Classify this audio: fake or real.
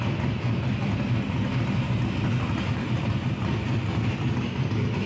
fake